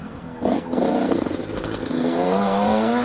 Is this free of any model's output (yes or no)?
no